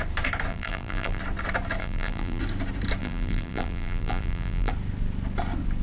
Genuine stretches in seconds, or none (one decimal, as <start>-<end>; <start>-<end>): 0.0-0.5; 1.2-1.8; 2.4-3.0; 4.7-5.8